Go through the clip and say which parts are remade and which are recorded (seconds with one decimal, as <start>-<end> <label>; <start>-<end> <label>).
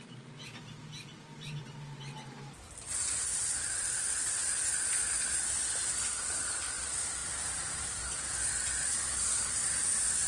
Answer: 0.0-3.3 recorded; 3.3-4.1 remade; 4.1-7.2 recorded; 7.2-10.3 remade